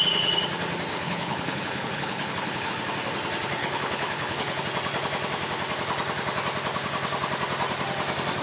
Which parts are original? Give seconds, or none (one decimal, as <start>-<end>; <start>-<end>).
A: 0.0-0.9; 2.7-3.6; 4.6-8.4

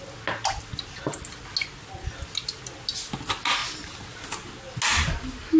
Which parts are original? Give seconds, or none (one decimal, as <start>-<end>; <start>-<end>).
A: 0.0-5.6

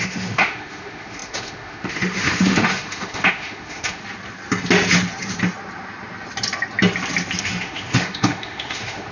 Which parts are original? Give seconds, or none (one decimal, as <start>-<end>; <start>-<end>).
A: 4.0-7.4

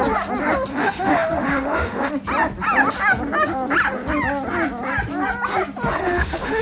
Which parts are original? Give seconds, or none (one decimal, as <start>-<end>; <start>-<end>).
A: 0.0-0.7; 2.1-5.9